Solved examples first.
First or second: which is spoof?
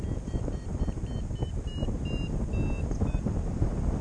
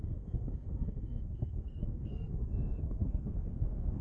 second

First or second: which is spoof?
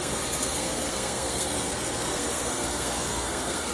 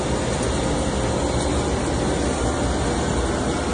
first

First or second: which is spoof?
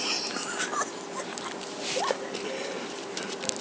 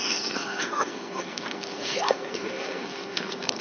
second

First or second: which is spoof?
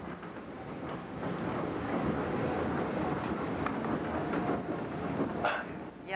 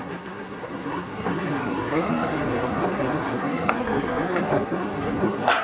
second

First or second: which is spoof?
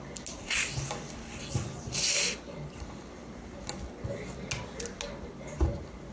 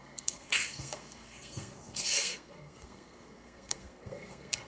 second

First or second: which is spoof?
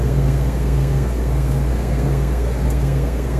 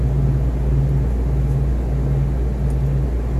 first